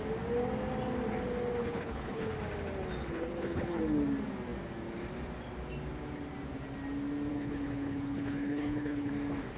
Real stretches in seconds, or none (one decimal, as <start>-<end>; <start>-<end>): 0.0-1.6; 2.3-3.0; 3.8-7.3; 9.1-9.6